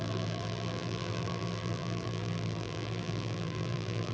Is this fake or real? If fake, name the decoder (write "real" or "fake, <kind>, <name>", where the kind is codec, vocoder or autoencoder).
fake, vocoder, BigVGAN v2